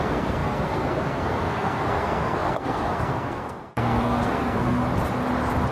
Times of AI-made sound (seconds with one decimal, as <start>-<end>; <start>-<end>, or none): 0.0-4.8